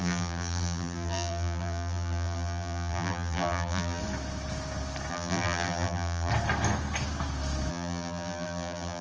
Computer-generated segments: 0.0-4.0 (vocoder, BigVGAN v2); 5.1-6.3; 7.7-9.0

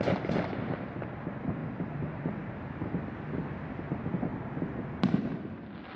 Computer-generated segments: 0.0-4.3 (vocoder, BigVGAN v2); 5.4-6.0